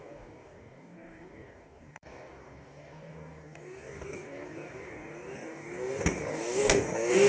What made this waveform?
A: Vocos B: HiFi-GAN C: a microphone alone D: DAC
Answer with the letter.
D